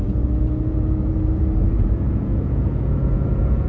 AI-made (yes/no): yes